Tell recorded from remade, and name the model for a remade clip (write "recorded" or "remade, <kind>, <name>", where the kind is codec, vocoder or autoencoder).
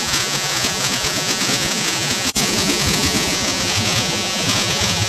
remade, vocoder, Vocos